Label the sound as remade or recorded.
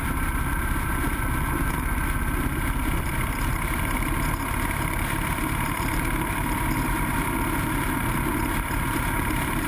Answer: remade